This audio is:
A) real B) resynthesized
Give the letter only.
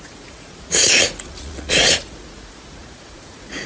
B